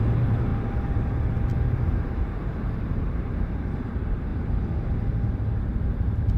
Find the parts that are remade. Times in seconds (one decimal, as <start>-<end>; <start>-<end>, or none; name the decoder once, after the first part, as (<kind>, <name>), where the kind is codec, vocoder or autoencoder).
0.0-4.3 (vocoder, BigVGAN v2); 5.1-6.4